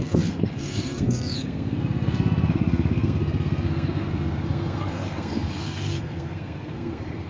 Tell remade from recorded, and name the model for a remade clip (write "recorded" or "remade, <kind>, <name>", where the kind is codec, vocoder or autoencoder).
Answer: remade, codec, SNAC